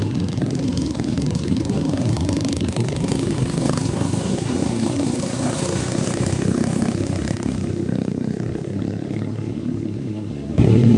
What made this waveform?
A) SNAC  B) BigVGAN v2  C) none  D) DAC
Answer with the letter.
A